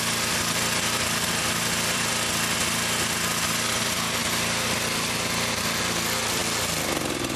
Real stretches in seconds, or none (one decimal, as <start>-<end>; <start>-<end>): 2.1-3.7; 6.4-7.4